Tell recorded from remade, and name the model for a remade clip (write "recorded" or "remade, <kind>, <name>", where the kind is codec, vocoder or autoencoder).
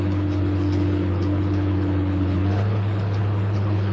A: remade, codec, HILCodec